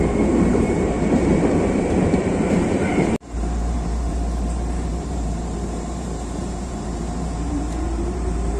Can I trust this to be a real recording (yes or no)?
no